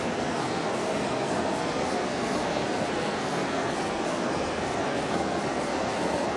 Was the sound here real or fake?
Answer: fake